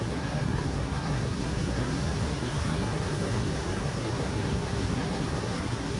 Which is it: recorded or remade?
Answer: remade